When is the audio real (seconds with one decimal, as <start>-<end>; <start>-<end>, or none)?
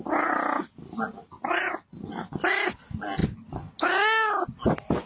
0.0-5.1